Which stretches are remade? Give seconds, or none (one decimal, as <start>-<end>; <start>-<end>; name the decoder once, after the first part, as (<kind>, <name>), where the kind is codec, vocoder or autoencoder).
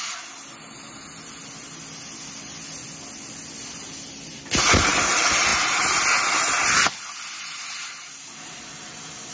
none